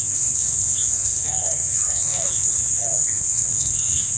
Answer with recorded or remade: remade